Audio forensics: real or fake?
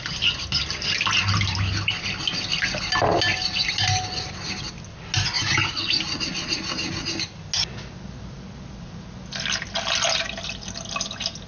real